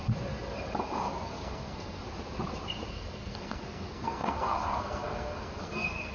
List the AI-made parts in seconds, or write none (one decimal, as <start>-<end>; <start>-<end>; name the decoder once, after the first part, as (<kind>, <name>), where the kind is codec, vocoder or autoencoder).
1.1-2.0 (codec, SNAC); 2.9-6.1